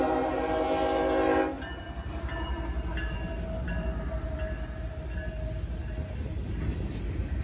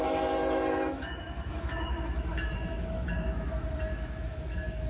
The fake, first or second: second